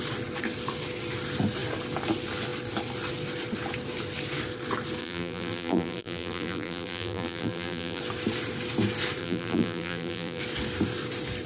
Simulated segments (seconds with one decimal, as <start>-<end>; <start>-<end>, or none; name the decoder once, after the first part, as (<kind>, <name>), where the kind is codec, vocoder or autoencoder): 5.0-8.0 (vocoder, BigVGAN v2); 9.2-10.4